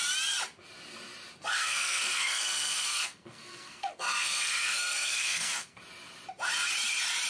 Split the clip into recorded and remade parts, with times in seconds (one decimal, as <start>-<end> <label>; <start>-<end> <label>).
0.0-1.4 recorded; 1.4-5.8 remade; 5.8-7.3 recorded